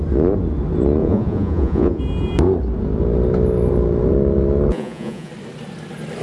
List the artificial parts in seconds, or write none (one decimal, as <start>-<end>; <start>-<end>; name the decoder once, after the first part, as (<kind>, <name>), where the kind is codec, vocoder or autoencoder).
1.0-2.0 (vocoder, Vocos); 4.7-5.3